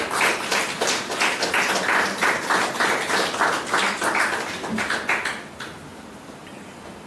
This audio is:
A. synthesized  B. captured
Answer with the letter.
B